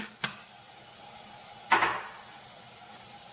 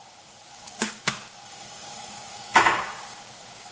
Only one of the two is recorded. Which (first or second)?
first